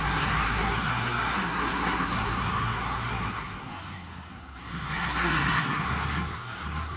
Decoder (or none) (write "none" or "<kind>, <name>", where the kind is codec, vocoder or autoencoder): codec, SNAC